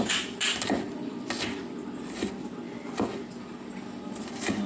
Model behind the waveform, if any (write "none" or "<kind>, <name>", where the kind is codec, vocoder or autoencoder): none